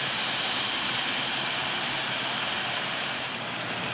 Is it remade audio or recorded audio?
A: remade